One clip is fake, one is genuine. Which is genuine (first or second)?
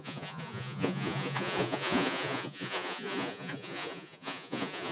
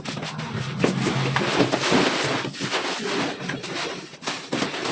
second